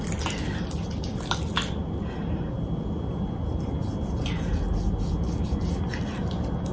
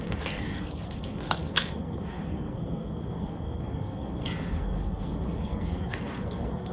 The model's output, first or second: second